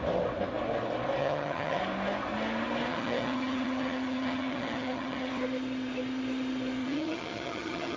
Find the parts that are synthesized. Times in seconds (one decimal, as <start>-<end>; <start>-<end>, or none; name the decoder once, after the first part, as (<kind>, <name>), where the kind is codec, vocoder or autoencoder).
1.2-1.8 (vocoder, HiFi-GAN); 2.9-5.3; 6.8-8.0